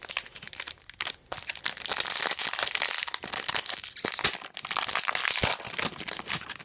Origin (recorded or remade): recorded